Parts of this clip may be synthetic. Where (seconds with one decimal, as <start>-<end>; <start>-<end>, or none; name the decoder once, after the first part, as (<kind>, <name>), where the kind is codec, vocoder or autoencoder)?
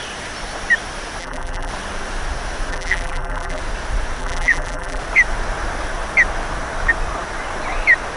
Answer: 1.2-1.7 (vocoder, BigVGAN v2); 2.7-3.6; 4.2-5.0